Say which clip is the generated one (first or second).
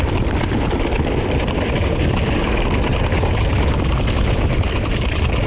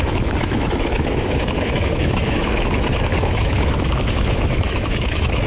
second